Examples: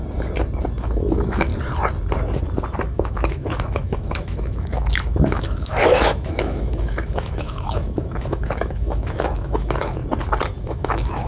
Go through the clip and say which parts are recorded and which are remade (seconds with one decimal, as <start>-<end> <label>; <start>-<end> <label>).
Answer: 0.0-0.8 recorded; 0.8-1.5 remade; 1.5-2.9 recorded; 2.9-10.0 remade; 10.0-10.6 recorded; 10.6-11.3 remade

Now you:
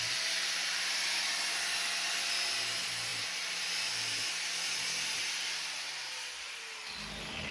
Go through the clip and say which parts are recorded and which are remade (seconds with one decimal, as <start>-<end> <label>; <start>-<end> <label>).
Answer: 0.0-1.6 remade; 1.6-7.5 recorded

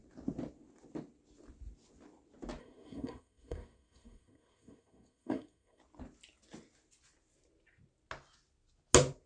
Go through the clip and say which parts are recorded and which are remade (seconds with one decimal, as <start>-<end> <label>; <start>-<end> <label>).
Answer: 0.0-2.6 recorded; 2.6-5.8 remade; 5.8-9.3 recorded

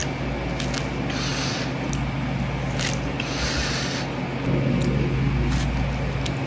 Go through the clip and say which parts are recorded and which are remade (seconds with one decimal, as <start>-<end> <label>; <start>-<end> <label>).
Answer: 0.0-6.5 recorded